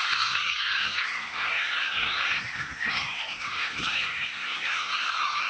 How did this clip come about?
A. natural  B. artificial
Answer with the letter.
B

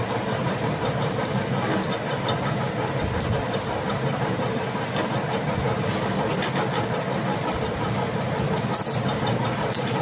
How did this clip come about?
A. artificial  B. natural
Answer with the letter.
B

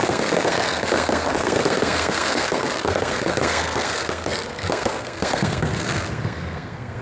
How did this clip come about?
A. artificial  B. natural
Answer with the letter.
A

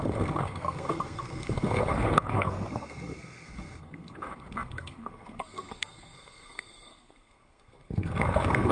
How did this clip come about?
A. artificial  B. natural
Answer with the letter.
A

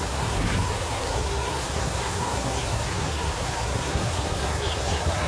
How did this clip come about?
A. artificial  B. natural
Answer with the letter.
A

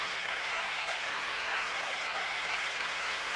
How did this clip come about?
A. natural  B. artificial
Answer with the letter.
B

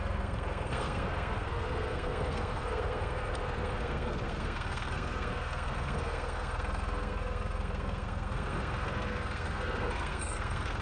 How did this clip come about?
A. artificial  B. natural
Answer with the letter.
A